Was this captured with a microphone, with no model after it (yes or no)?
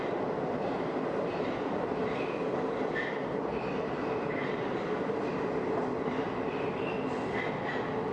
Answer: no